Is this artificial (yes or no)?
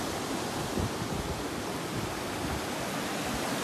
no